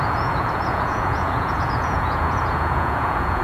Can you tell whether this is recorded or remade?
remade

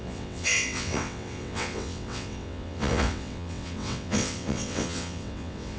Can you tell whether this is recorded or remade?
remade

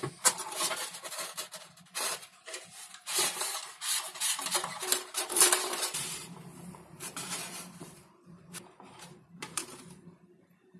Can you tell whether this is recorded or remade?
remade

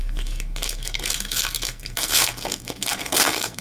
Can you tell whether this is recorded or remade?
remade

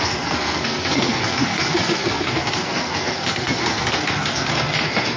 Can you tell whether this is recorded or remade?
remade